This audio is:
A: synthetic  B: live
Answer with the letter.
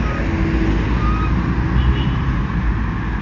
B